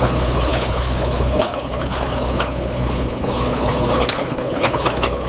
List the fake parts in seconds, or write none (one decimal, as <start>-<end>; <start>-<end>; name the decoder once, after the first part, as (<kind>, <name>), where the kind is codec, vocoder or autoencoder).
0.0-5.3 (codec, HILCodec)